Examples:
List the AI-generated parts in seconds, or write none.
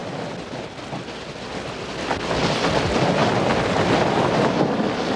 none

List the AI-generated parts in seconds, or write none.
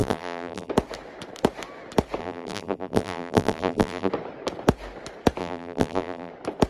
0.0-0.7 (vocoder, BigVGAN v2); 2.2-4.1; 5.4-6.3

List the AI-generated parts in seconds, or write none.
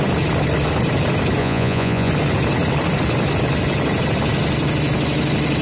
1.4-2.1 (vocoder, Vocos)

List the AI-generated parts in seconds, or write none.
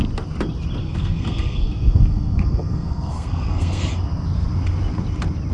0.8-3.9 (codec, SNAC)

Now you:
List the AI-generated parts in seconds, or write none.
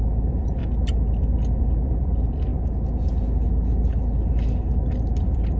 0.0-0.6 (vocoder, BigVGAN v2); 1.6-2.5; 3.7-5.6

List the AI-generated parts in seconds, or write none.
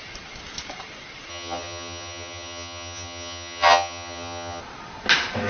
1.3-4.6 (vocoder, HiFi-GAN)